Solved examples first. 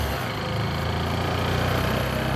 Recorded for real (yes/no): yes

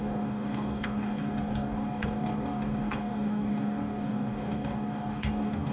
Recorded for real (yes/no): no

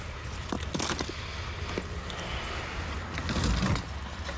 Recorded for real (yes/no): yes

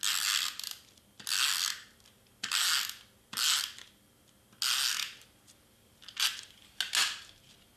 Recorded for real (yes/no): yes